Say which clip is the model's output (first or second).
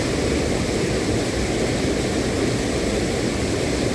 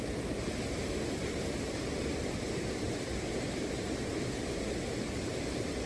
second